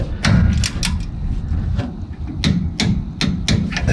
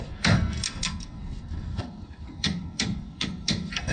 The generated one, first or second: second